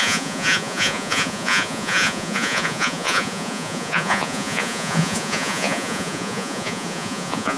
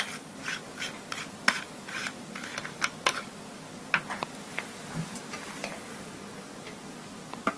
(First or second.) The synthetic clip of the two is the first